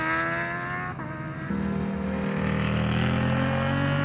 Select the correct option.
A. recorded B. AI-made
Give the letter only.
A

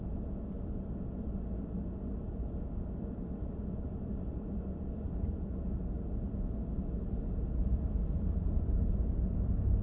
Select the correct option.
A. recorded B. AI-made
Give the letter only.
A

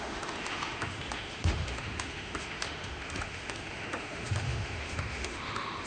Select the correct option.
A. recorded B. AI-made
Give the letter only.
B